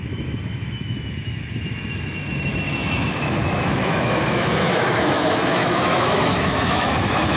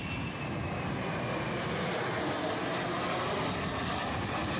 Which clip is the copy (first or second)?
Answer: first